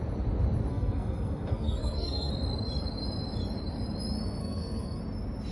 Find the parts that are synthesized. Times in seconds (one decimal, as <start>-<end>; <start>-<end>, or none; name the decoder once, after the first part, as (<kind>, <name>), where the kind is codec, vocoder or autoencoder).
0.7-2.3 (codec, SNAC); 4.4-5.0